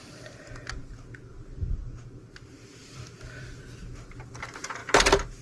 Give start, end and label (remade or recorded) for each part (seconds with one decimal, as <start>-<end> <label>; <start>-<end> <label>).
0.0-2.8 recorded; 2.8-3.6 remade; 3.6-5.4 recorded